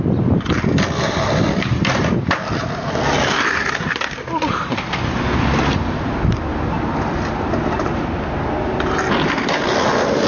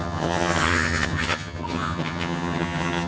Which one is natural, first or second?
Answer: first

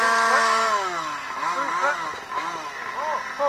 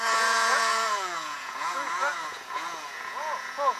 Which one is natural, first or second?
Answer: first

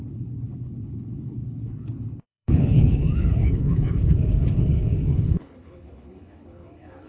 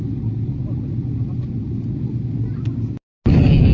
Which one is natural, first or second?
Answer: second